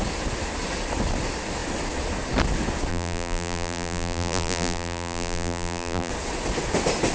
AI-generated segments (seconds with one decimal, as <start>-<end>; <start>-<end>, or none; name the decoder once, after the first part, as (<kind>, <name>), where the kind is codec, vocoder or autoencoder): 2.9-6.1 (vocoder, BigVGAN v2)